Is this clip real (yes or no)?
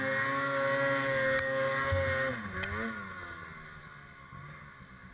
yes